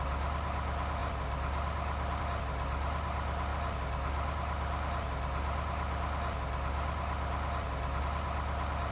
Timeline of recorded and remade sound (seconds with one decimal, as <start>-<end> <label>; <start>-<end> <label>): 0.0-8.9 recorded